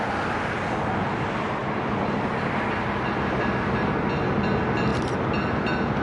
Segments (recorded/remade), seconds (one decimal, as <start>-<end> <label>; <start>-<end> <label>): 0.0-1.6 recorded; 1.6-2.3 remade; 2.3-6.0 recorded

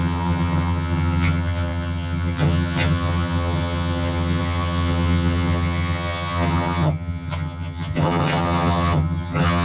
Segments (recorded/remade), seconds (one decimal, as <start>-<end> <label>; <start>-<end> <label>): 0.0-9.6 remade

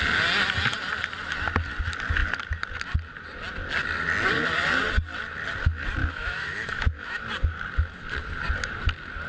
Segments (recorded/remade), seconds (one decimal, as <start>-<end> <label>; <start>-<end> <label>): 0.0-6.0 recorded; 6.0-7.2 remade; 7.2-9.3 recorded

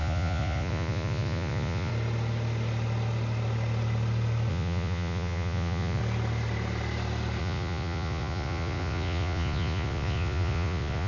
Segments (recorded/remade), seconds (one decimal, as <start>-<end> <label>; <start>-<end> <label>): 0.0-1.9 remade; 1.9-4.5 recorded; 4.5-6.0 remade; 6.0-7.4 recorded; 7.4-11.1 remade

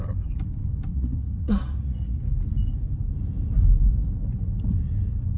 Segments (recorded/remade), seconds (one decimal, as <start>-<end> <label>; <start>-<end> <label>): 0.0-0.9 recorded; 0.9-2.2 remade; 2.2-5.4 recorded

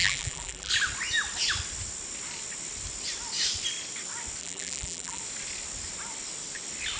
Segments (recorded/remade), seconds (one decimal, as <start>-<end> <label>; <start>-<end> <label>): 0.0-0.7 remade; 0.7-4.4 recorded; 4.4-5.2 remade; 5.2-7.0 recorded